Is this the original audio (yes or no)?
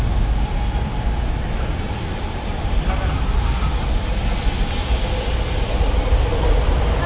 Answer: yes